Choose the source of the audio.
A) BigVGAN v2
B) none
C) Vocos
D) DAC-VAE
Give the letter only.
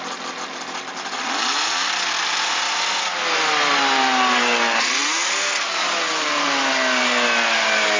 B